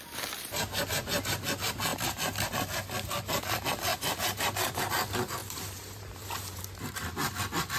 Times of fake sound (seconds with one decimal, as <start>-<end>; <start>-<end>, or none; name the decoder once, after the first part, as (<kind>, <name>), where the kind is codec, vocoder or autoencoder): 3.9-4.9 (vocoder, BigVGAN v2); 5.4-6.6

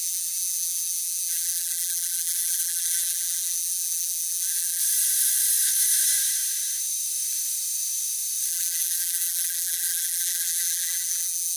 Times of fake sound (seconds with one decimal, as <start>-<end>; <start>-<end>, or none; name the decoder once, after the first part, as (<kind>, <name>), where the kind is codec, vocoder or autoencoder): 0.0-4.8 (vocoder, BigVGAN v2); 8.5-11.6

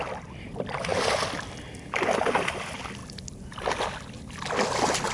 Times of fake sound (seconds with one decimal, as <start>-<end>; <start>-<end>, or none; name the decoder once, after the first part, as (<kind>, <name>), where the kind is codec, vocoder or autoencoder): 0.0-0.9 (vocoder, BigVGAN v2); 1.9-5.1

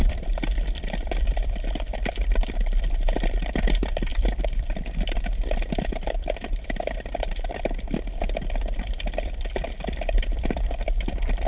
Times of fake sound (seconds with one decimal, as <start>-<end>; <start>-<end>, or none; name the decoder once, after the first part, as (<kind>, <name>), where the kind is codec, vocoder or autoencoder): 0.0-11.5 (vocoder, BigVGAN v2)

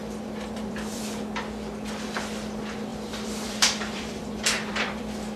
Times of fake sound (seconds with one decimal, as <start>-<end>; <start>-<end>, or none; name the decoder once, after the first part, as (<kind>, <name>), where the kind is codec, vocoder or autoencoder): 0.0-1.0 (vocoder, BigVGAN v2); 2.9-5.0

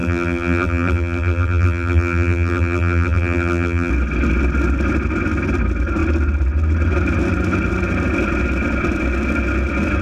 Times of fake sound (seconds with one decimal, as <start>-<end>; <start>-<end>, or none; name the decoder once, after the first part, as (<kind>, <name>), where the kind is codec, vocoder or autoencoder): 0.0-3.9 (vocoder, BigVGAN v2)